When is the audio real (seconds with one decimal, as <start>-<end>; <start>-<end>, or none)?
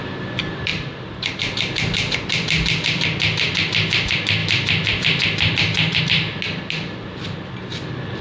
0.0-8.2